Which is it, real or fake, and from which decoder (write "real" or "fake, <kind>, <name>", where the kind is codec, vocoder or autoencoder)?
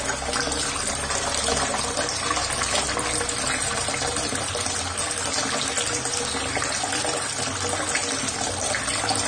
real